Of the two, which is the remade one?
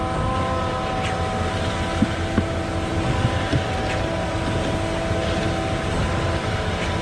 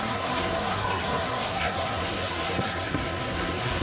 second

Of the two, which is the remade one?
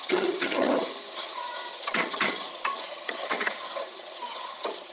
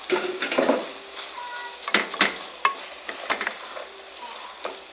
first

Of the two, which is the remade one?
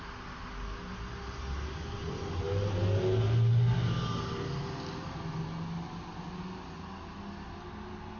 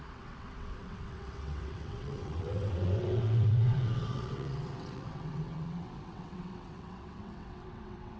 second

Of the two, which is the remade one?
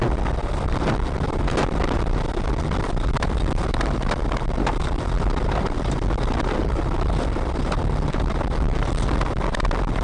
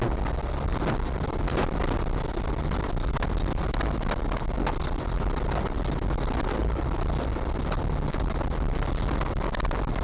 first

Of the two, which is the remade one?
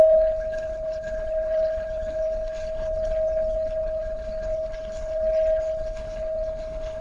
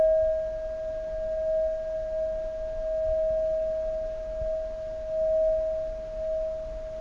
first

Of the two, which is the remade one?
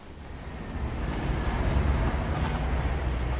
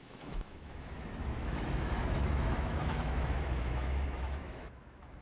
second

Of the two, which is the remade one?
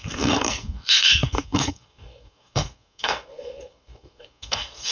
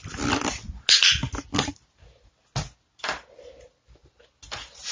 first